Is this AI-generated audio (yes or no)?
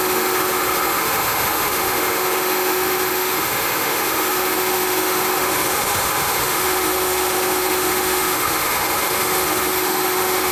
yes